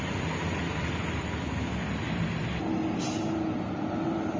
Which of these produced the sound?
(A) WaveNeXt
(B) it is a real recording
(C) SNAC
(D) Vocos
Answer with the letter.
B